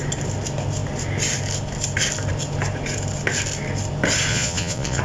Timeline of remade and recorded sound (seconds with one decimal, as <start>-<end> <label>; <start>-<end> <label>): 0.0-4.3 recorded; 4.3-5.0 remade